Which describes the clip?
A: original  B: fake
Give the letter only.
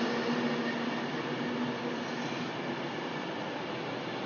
A